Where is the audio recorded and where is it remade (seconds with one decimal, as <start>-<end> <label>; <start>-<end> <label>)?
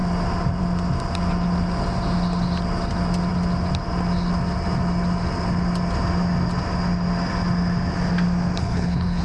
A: 0.0-8.6 recorded; 8.6-9.2 remade